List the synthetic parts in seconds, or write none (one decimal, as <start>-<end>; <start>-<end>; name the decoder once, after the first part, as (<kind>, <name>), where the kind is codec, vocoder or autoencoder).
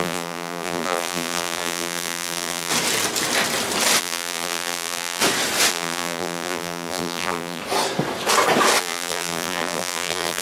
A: 0.0-2.7 (vocoder, BigVGAN v2); 4.0-5.2; 5.7-7.6; 8.8-10.4